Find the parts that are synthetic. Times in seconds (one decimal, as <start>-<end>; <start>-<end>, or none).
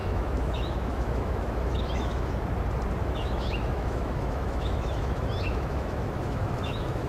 0.0-2.3; 3.0-7.1